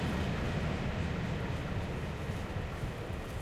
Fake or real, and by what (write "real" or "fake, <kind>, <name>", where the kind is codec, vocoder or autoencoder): real